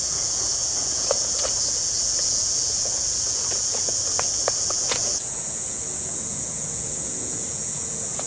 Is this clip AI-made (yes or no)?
yes